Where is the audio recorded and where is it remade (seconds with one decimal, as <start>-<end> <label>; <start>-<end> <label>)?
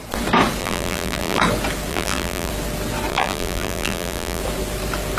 0.0-0.6 recorded; 0.6-1.4 remade; 1.4-1.9 recorded; 1.9-2.5 remade; 2.5-3.1 recorded; 3.1-4.4 remade; 4.4-5.2 recorded